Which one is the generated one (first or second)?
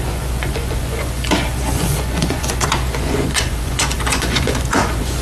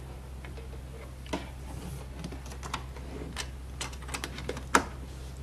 first